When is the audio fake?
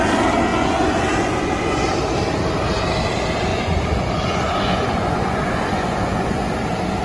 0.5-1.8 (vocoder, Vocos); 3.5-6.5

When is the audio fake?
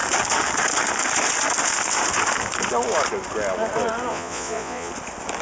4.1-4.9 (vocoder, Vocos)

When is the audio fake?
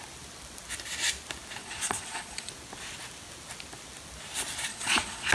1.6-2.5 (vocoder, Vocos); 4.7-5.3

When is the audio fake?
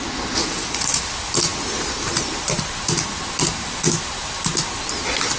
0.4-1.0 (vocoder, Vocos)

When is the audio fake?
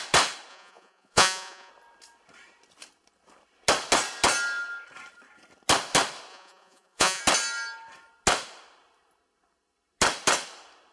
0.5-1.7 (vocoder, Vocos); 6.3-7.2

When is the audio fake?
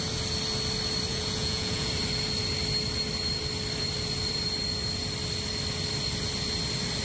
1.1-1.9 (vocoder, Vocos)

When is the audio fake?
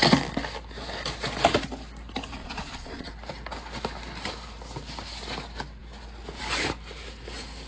2.4-3.1 (vocoder, Vocos)